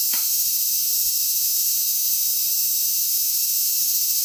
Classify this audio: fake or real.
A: fake